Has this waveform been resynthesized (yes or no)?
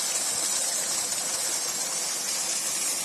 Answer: no